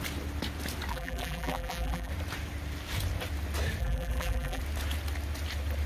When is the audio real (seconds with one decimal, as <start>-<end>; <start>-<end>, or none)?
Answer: 0.0-0.9; 2.1-3.8; 4.6-5.9